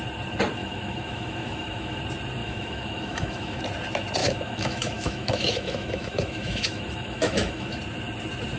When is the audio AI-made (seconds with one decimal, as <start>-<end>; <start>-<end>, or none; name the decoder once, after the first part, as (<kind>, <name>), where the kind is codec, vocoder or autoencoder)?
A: 0.6-2.0 (autoencoder, DAC-VAE); 2.4-3.6; 4.2-7.8